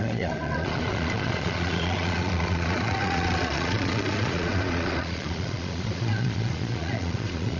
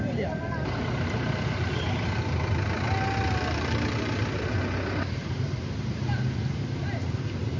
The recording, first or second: second